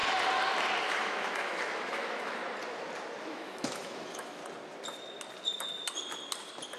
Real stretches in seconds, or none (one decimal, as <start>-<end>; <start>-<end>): 0.0-0.8; 2.4-3.2; 4.4-6.8